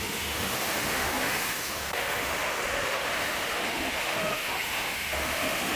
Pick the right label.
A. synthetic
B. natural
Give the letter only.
A